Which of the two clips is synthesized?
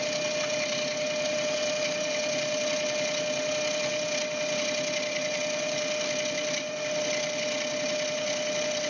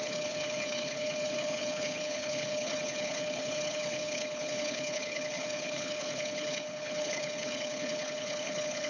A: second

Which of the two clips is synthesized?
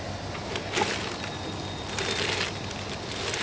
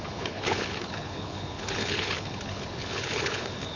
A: second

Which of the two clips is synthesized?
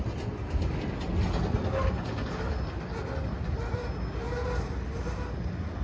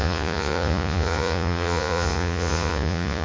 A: second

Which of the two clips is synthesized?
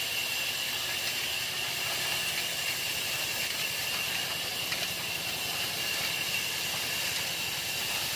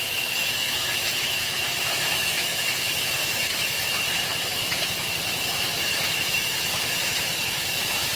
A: second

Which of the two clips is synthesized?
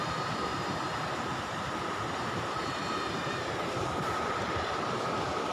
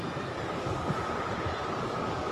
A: first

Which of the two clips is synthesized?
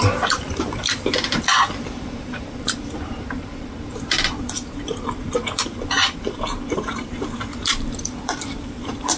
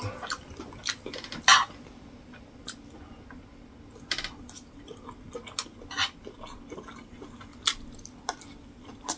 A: first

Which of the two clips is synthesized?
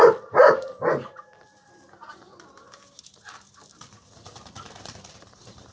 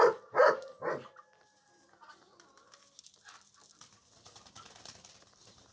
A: first